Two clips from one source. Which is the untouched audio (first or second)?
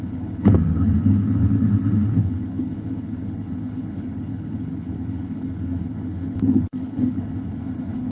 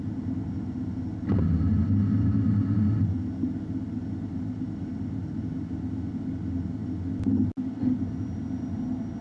second